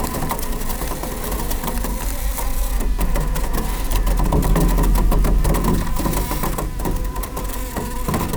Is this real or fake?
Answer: real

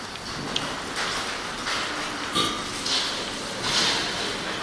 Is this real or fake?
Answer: real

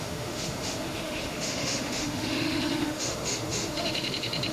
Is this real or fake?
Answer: fake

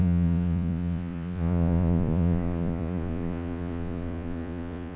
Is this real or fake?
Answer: fake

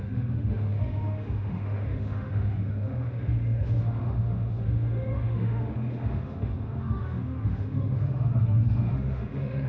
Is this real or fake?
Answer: fake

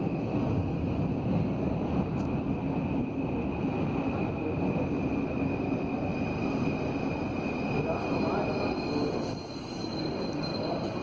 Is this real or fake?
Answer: real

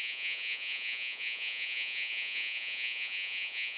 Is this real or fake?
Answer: fake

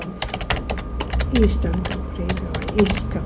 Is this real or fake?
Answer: fake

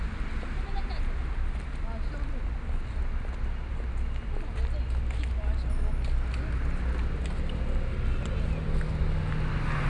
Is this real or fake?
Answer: real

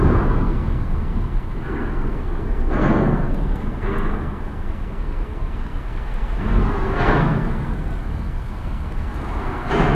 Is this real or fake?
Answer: fake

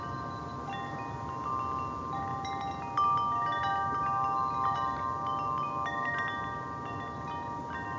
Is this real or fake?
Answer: real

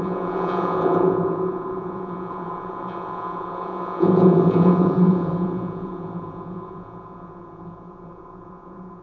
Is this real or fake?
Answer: fake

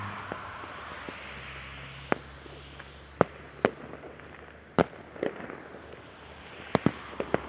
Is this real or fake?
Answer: real